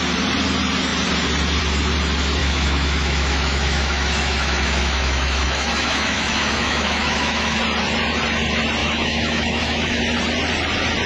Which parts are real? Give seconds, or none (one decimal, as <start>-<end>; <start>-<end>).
0.0-2.4; 7.6-8.8; 10.0-11.1